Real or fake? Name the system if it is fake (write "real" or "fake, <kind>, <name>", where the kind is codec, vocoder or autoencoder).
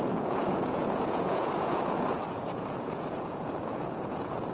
fake, vocoder, Vocos